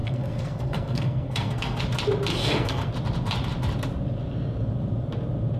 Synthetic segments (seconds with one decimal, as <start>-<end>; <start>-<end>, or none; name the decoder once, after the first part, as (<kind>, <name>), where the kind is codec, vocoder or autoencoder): 0.0-1.8 (codec, SNAC); 2.3-2.9